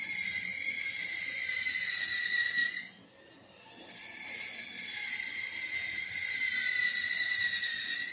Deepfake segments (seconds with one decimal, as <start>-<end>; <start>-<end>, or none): none